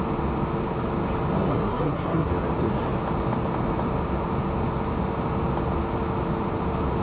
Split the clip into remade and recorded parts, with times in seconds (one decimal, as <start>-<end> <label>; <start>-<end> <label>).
0.0-1.5 recorded; 1.5-2.3 remade; 2.3-7.0 recorded